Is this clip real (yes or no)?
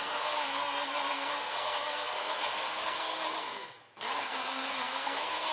no